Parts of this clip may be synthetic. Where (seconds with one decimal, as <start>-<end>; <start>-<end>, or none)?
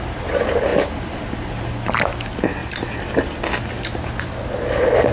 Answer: none